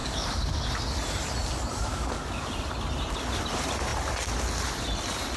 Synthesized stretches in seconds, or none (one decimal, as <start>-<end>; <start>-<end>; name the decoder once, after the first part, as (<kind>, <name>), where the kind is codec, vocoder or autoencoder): 0.0-0.6 (codec, DAC); 1.9-2.5